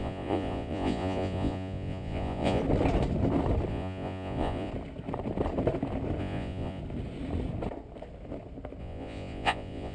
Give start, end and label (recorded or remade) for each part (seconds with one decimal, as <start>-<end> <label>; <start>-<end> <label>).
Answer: 0.0-2.6 remade; 2.6-3.7 recorded; 3.7-4.7 remade; 4.7-6.2 recorded; 6.2-6.8 remade; 6.8-8.8 recorded; 8.8-9.9 remade